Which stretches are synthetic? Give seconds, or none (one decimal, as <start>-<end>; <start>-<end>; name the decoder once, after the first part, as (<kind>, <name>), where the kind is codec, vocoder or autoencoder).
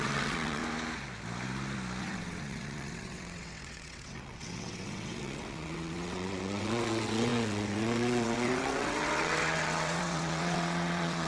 0.0-0.6 (vocoder, WaveNeXt); 2.0-11.3